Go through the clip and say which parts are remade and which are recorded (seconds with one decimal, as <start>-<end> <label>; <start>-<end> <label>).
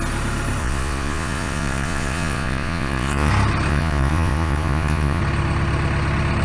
0.0-0.6 recorded; 0.6-3.3 remade; 3.3-3.7 recorded; 3.7-5.2 remade; 5.2-6.4 recorded